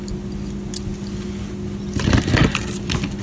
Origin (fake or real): real